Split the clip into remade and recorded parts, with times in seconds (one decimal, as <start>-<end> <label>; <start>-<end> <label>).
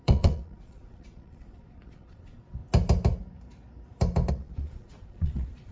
0.0-2.6 remade; 2.6-4.3 recorded; 4.3-5.7 remade